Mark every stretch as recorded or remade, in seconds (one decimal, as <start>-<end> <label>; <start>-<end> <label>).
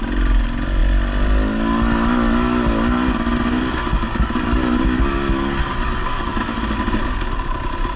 0.0-8.0 recorded